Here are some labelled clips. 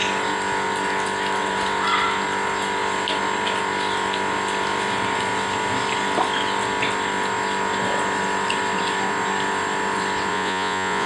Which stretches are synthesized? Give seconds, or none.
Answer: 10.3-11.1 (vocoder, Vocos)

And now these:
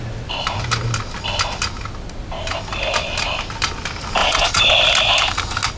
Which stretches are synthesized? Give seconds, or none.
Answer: 4.2-4.7 (vocoder, Vocos)

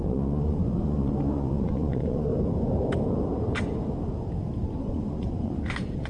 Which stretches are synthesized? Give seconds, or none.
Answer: 0.0-2.3 (vocoder, Vocos); 4.8-6.1

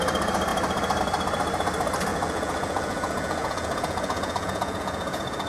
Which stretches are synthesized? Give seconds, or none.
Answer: 2.1-5.5 (vocoder, Vocos)

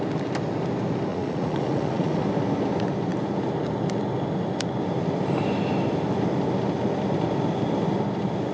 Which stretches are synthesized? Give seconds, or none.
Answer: 1.1-2.2 (vocoder, Vocos)

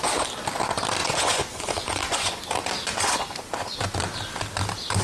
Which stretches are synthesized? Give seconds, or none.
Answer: 1.0-2.4 (vocoder, Vocos)

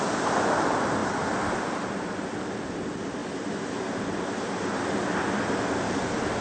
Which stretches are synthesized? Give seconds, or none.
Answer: none

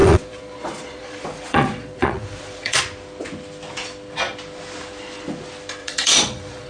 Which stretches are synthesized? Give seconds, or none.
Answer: 0.0-2.8 (vocoder, Vocos); 5.8-6.7